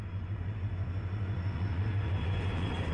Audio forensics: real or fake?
fake